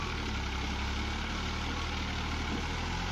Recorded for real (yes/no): yes